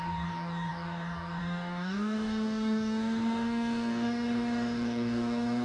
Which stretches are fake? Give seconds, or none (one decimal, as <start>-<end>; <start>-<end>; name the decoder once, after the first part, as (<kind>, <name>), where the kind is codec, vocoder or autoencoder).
0.0-5.6 (codec, DAC)

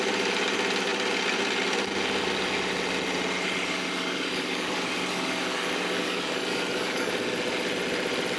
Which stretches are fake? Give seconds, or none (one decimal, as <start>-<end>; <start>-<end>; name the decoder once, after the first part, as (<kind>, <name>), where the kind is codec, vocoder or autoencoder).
3.4-7.1 (codec, DAC)

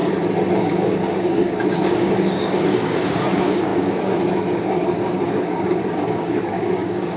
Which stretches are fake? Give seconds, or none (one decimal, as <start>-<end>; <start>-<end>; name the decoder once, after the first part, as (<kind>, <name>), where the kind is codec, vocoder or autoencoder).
0.5-7.2 (codec, DAC)

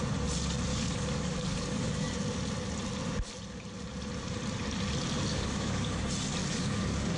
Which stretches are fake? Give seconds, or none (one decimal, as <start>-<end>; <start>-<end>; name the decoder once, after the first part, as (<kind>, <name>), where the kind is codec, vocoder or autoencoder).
0.7-2.1 (codec, DAC); 5.3-6.0; 6.4-7.2

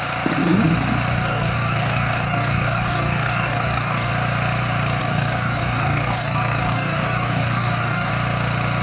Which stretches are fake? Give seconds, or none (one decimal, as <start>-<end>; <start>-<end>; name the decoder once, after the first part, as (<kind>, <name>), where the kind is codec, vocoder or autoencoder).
1.1-4.1 (codec, DAC); 5.0-8.1